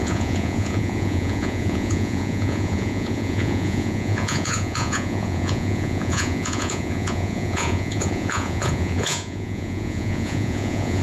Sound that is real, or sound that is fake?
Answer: fake